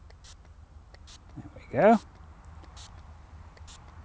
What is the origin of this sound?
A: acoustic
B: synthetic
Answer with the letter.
A